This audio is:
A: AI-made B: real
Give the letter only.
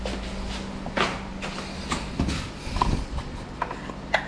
B